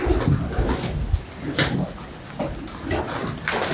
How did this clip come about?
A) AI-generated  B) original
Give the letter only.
B